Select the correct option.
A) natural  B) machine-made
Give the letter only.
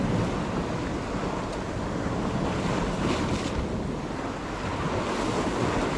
A